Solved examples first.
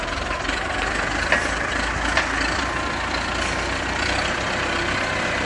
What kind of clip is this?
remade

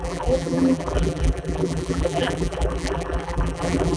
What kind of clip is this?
remade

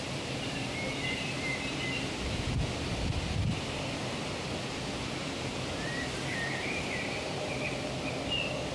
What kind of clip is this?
remade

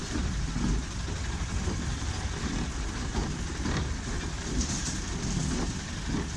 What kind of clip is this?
recorded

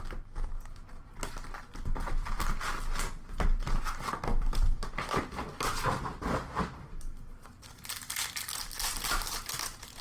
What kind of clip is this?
recorded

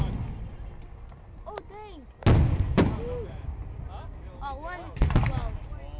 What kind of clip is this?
recorded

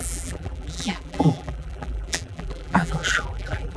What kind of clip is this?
remade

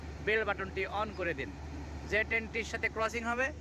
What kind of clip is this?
remade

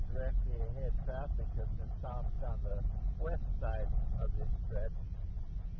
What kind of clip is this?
recorded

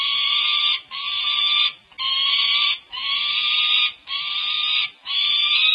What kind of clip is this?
recorded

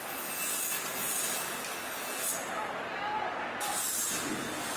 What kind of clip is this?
recorded